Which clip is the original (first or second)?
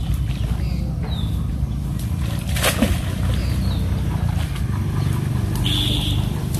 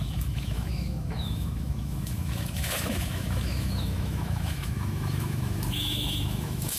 first